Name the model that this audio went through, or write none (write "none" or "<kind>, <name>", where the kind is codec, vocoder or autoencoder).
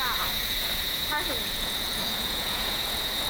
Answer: vocoder, Vocos